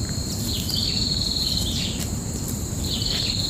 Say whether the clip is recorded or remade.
remade